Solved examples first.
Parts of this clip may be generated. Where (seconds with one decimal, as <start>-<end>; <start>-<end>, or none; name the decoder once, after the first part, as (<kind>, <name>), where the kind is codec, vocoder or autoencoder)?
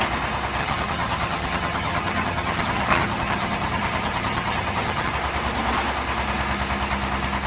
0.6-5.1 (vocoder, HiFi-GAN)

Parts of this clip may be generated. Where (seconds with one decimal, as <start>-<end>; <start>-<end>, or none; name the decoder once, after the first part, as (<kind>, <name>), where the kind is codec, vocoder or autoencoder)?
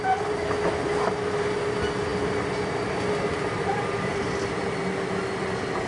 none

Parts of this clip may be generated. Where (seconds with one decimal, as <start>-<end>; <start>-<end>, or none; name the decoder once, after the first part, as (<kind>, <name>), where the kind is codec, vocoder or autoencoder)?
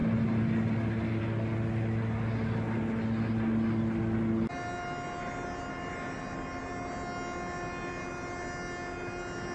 none